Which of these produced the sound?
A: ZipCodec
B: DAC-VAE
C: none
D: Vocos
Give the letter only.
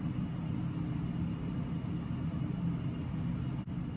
C